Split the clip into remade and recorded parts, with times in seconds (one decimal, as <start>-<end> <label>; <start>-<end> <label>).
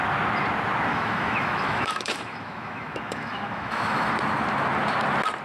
0.0-0.9 recorded; 0.9-4.1 remade; 4.1-5.4 recorded